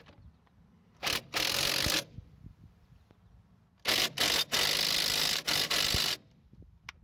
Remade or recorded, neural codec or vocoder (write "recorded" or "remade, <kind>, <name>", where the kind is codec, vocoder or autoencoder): recorded